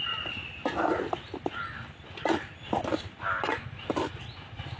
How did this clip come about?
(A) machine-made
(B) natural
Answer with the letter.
B